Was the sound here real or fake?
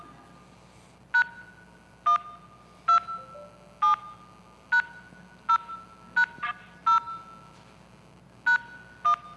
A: real